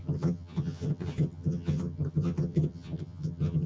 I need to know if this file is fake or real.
fake